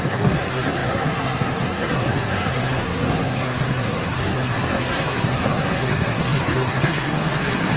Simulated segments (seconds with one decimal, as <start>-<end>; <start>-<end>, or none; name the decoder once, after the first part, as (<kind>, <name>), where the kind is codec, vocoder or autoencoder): 0.0-7.8 (codec, SNAC)